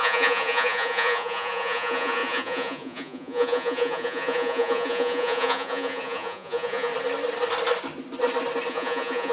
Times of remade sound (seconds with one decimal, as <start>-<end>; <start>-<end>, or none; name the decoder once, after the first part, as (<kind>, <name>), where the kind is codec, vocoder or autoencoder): 0.0-6.9 (vocoder, Vocos); 8.7-9.3